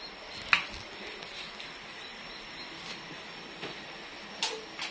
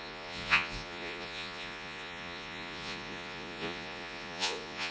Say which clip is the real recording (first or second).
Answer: first